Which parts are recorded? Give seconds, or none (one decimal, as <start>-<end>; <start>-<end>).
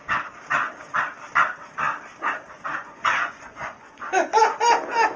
0.0-2.8; 4.1-5.2